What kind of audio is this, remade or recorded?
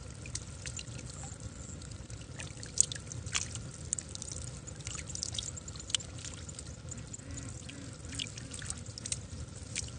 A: recorded